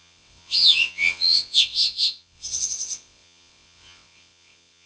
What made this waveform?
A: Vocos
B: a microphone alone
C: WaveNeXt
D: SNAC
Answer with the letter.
C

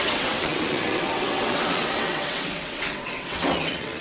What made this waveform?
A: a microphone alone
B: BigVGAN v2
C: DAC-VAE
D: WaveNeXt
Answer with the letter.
D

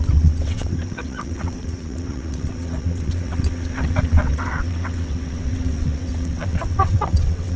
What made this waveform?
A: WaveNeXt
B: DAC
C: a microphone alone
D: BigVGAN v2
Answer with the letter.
A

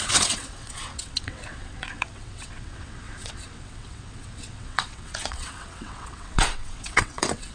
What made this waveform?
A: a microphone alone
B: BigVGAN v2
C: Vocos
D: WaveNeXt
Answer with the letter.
D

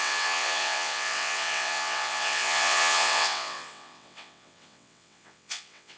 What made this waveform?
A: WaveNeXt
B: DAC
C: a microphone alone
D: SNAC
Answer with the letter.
A